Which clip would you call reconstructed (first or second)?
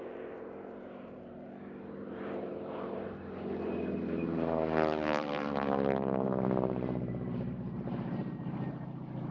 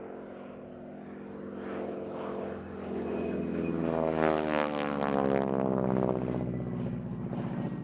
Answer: first